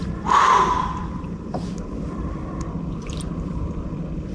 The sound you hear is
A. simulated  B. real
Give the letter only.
A